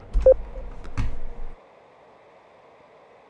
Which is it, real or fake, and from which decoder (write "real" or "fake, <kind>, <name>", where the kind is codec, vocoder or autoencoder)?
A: real